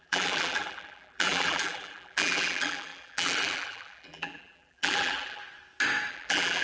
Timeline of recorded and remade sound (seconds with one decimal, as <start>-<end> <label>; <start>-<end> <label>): 0.0-5.4 remade; 5.4-6.1 recorded; 6.1-6.6 remade